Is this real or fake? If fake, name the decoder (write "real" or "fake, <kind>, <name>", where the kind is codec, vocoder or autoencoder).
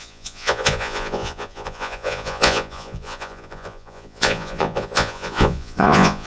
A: fake, vocoder, Vocos